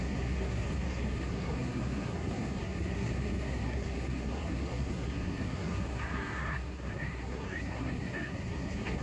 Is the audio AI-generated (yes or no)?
yes